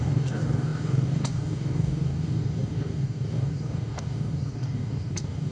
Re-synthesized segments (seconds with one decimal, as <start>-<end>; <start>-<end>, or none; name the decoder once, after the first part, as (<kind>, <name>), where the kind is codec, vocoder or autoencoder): 0.0-5.5 (codec, DAC)